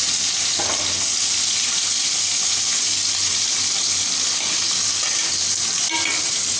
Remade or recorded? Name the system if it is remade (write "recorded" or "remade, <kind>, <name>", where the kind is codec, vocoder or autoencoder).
recorded